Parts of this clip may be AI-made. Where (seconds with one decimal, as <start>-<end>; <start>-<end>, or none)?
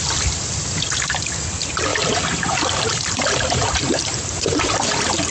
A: 1.9-5.3